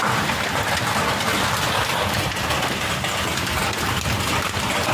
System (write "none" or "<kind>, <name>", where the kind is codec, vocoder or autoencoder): none